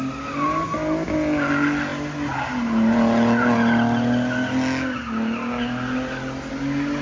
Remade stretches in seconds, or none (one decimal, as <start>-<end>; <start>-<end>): none